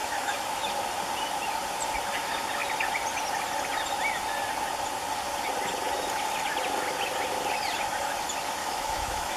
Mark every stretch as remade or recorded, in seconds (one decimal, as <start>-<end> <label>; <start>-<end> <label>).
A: 0.0-0.7 remade; 0.7-8.6 recorded; 8.6-9.4 remade